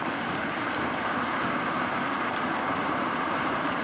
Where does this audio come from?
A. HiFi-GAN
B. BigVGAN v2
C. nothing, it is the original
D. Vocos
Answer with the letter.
B